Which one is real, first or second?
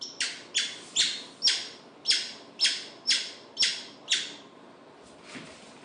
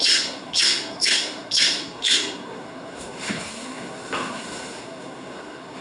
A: first